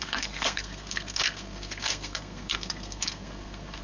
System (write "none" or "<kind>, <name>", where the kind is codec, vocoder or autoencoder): codec, SNAC